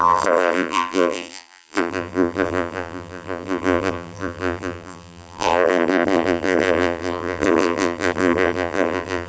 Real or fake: fake